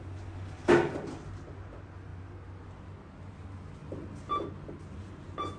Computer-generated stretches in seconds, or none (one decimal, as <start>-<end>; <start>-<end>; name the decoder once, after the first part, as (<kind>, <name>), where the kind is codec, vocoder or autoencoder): none